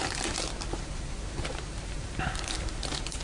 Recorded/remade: remade